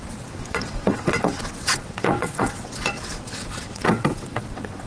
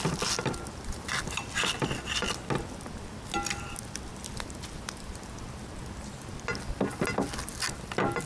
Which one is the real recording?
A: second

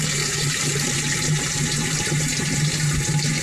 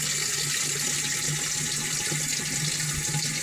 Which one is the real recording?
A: second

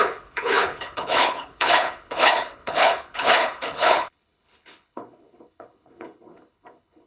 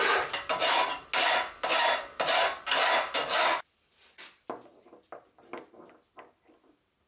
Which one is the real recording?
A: second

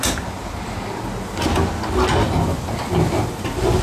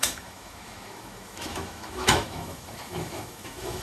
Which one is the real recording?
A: first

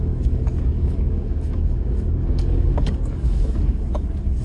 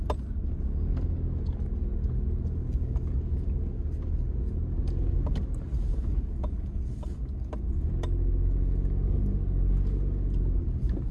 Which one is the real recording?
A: second